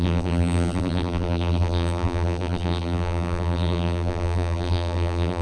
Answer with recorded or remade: remade